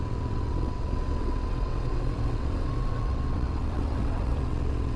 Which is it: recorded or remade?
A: remade